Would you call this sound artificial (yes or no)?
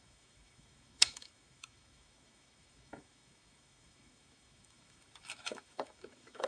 yes